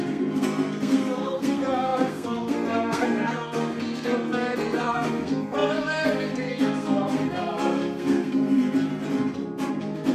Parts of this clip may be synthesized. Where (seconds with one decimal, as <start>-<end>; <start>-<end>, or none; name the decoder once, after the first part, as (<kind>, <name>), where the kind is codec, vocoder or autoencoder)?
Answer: 0.0-8.9 (codec, SNAC); 9.7-10.1